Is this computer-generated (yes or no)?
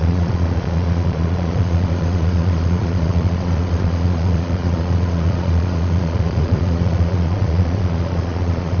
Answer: yes